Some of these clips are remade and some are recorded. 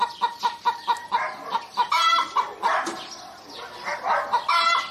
recorded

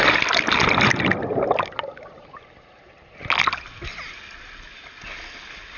recorded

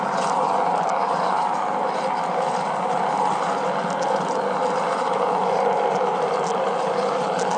recorded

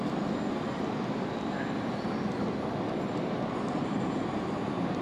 recorded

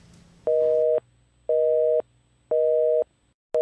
recorded